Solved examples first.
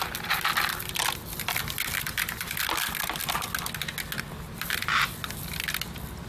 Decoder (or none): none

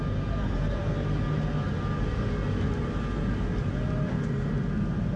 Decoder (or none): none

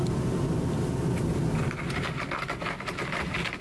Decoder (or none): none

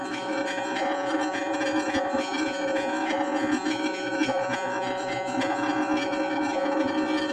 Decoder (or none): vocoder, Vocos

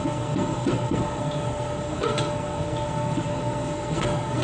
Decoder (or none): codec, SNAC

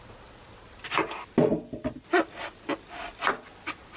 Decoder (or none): none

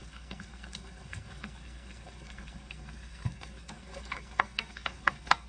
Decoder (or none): codec, SNAC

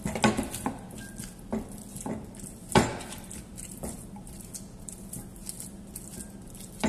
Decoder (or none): none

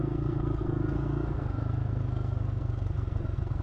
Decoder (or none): codec, SNAC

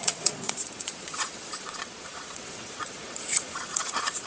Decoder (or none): vocoder, Vocos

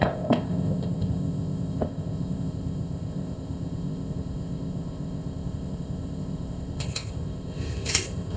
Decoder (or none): codec, ZipCodec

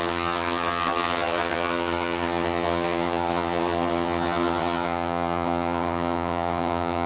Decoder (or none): vocoder, HiFi-GAN